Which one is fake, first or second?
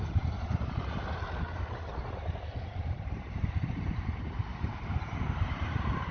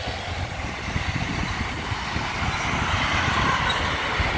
first